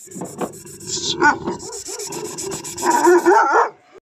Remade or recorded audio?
recorded